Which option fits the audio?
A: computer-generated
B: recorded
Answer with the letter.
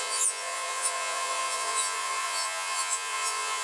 A